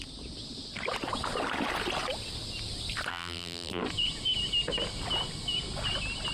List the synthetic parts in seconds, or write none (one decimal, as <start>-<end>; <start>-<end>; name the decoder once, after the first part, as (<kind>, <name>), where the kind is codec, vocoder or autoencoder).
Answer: 3.1-3.8 (vocoder, BigVGAN v2)